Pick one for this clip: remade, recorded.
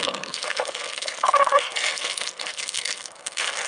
remade